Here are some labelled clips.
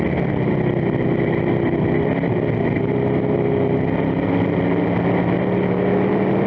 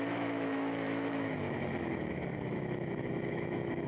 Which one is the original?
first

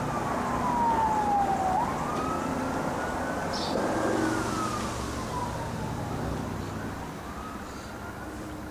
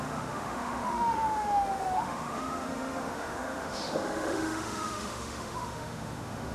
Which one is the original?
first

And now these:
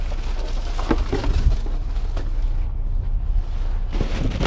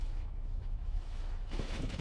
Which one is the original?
first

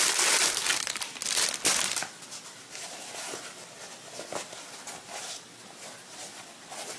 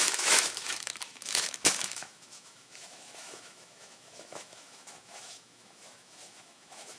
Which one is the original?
first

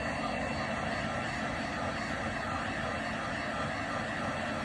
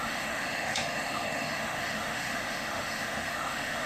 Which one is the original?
first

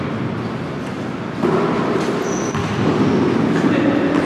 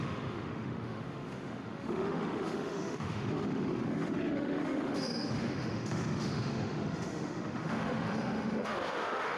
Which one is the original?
first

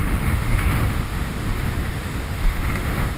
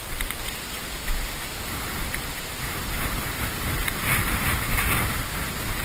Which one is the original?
second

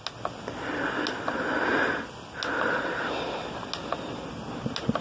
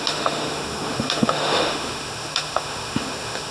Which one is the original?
first